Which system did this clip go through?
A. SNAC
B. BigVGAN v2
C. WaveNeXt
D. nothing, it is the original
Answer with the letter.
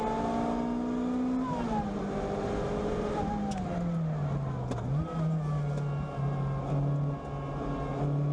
D